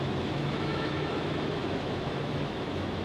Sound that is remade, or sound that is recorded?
remade